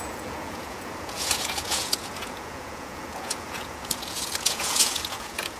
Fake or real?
fake